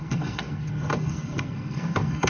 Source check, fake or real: fake